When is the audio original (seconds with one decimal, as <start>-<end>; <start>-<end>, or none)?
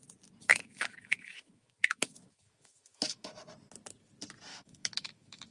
0.0-0.5; 3.4-4.5